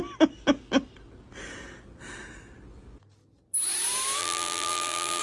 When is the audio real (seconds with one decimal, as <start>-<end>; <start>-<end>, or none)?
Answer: 0.0-4.2